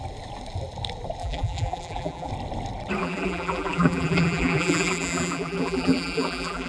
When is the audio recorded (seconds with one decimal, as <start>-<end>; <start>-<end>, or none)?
0.0-1.2; 2.3-3.0